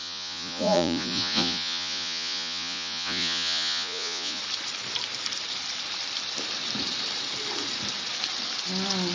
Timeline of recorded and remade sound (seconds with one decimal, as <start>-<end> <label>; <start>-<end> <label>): 0.0-4.4 remade; 4.4-9.1 recorded